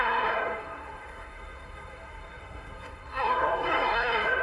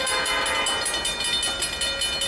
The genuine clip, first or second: second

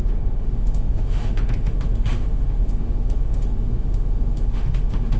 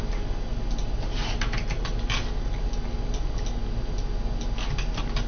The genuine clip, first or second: second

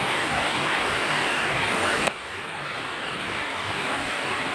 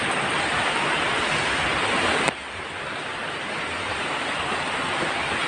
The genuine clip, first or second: second